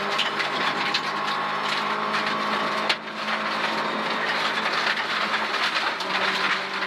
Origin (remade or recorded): recorded